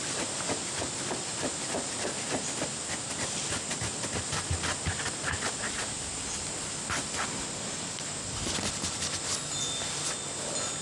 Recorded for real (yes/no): yes